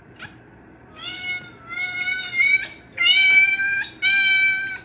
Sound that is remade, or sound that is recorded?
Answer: recorded